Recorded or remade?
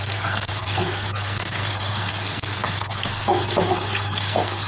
remade